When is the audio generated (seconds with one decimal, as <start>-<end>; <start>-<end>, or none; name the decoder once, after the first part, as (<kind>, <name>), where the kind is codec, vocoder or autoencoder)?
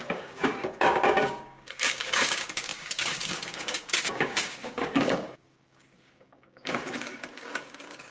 0.0-8.1 (codec, DAC)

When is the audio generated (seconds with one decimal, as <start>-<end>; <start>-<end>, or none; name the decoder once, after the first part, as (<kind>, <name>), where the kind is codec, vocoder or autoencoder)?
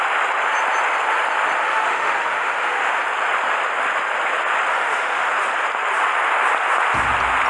1.6-3.0 (autoencoder, DAC-VAE); 4.7-5.3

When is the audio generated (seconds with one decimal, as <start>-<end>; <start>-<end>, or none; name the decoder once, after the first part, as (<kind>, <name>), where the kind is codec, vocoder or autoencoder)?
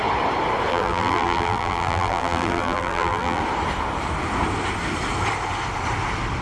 0.7-3.4 (vocoder, BigVGAN v2)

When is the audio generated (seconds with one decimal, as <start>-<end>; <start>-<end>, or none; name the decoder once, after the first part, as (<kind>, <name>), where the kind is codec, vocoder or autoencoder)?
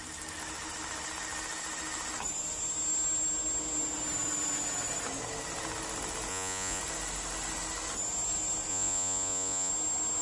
6.3-6.8 (vocoder, Vocos); 8.7-9.7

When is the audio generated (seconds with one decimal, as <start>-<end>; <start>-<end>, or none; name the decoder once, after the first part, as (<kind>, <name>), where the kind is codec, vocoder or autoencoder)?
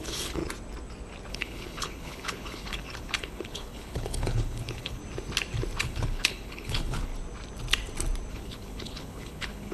0.0-0.4 (codec, HILCodec); 1.3-5.0; 5.8-7.1; 8.3-9.7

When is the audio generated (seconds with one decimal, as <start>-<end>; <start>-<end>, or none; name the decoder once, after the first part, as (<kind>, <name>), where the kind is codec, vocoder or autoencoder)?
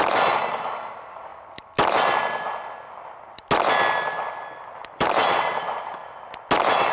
0.0-1.3 (vocoder, BigVGAN v2); 4.6-6.0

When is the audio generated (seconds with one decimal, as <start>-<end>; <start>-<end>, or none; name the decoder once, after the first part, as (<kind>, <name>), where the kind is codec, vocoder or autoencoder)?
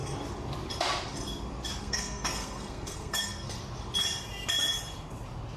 1.8-3.6 (codec, SNAC)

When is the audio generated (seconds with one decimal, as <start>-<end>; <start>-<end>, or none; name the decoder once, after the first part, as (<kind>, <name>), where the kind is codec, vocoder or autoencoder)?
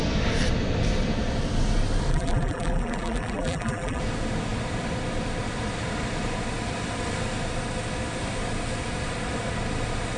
2.1-4.0 (vocoder, BigVGAN v2)